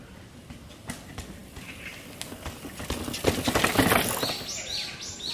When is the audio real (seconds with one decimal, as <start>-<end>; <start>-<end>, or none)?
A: 0.0-5.3

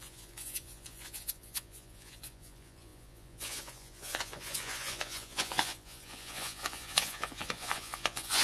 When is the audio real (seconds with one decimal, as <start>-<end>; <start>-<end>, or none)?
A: none

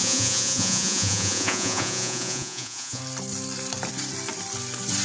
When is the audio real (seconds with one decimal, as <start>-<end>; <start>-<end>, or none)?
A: 3.0-5.0

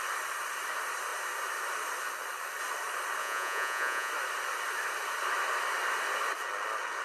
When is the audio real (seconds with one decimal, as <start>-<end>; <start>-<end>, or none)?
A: 0.0-3.2; 4.1-7.0

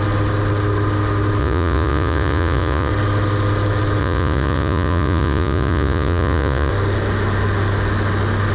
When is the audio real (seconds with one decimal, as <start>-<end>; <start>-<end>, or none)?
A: 0.0-1.4; 2.9-4.0; 6.7-8.5